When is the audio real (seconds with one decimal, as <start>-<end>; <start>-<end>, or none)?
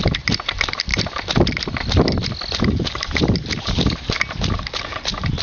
0.0-5.4